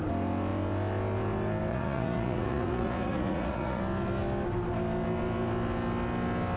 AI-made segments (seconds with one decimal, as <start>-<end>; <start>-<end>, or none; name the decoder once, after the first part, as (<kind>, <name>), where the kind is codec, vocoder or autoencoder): 1.7-3.8 (vocoder, Vocos)